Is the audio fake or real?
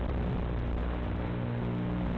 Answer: real